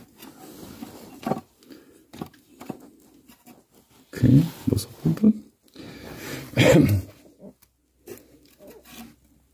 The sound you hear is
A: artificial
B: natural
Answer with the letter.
B